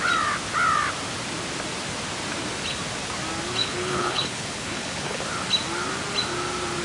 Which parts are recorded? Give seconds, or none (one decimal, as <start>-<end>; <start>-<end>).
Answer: 0.0-3.6; 5.2-6.8